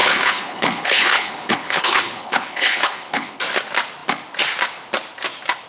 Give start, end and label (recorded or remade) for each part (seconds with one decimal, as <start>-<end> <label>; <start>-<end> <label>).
0.0-3.4 remade; 3.4-5.7 recorded